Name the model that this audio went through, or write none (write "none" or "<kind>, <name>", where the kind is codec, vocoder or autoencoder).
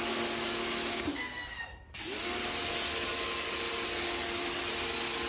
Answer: none